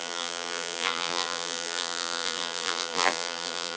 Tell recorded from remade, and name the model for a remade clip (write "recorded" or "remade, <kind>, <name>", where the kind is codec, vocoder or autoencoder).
remade, vocoder, BigVGAN v2